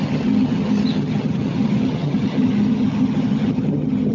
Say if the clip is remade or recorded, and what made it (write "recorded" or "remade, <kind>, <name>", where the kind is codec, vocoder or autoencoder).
remade, vocoder, HiFi-GAN